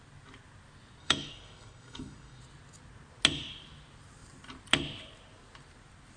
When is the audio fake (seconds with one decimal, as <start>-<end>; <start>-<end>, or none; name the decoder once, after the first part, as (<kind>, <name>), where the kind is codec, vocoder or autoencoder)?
1.0-2.4 (codec, DAC)